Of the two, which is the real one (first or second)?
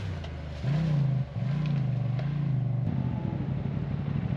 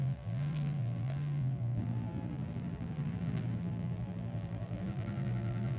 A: first